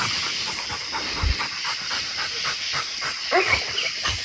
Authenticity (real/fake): fake